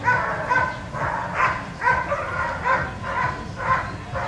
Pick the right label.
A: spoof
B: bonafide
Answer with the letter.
B